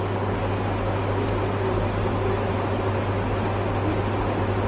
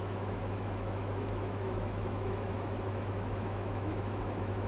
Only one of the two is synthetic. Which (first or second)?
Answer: second